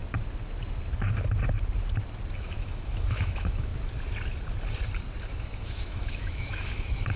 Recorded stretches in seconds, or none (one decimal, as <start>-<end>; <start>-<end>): 0.0-2.4; 3.7-5.2